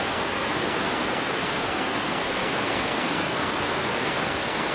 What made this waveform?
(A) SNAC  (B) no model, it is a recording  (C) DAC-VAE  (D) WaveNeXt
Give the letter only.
A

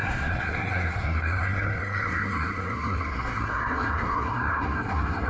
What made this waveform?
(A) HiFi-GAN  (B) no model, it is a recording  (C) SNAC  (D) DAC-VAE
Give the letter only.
C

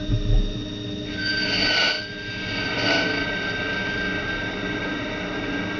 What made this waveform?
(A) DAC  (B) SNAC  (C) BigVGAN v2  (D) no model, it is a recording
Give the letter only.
D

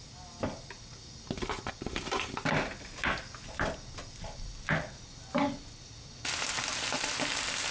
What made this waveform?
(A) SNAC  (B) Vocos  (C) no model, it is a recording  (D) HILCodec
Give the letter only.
C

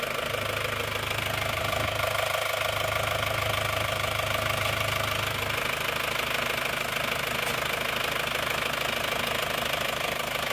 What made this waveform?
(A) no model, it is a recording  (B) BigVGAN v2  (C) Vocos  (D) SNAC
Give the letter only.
A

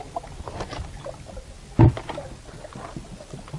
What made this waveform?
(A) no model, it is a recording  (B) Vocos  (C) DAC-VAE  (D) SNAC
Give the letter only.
A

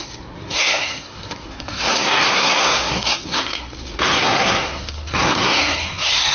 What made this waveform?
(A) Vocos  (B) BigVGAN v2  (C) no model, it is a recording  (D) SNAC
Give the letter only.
D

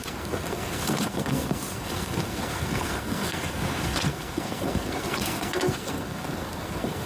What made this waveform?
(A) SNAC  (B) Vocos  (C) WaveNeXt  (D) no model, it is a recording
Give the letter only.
A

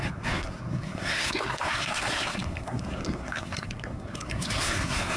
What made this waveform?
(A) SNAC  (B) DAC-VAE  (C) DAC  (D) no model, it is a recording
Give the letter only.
A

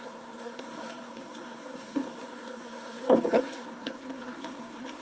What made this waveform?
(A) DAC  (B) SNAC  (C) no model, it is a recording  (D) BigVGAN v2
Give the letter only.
B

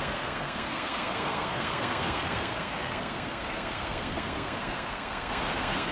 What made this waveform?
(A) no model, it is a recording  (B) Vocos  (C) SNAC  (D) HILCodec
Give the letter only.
C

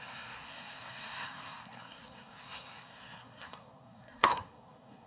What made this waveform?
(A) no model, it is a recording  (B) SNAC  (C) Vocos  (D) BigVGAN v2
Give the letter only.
B